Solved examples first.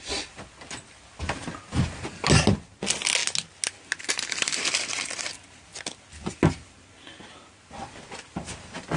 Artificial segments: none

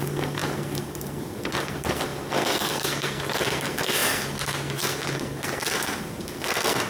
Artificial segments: 0.0-6.9 (codec, SNAC)

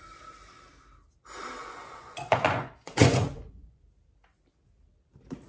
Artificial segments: 1.6-3.8 (vocoder, Vocos)

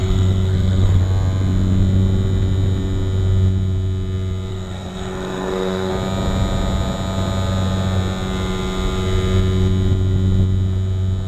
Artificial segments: 0.0-1.0 (codec, SNAC); 4.5-5.9